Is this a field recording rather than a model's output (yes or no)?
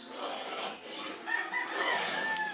yes